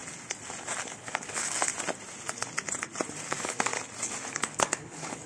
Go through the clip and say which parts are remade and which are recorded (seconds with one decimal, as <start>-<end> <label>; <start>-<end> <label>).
0.0-0.8 recorded; 0.8-1.7 remade; 1.7-3.3 recorded; 3.3-3.7 remade; 3.7-4.3 recorded; 4.3-5.3 remade